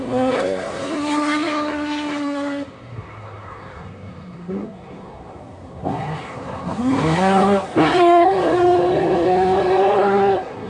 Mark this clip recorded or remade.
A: remade